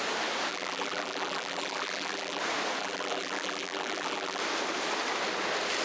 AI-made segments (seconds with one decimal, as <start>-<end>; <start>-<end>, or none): 0.5-2.4; 2.8-4.4